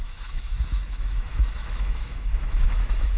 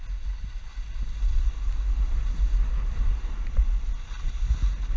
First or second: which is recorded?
second